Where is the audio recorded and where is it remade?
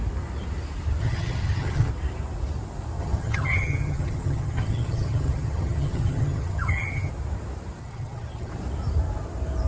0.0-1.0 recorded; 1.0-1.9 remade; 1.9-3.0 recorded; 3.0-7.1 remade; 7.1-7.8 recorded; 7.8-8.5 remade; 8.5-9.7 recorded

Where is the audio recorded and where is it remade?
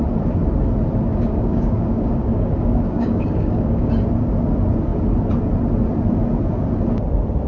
0.0-1.1 recorded; 1.1-3.9 remade; 3.9-7.5 recorded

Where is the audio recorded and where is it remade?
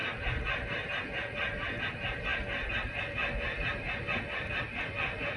0.0-5.4 recorded